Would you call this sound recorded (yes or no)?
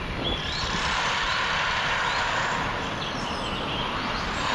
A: yes